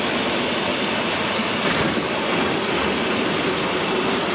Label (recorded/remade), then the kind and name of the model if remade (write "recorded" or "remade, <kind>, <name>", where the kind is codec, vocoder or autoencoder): recorded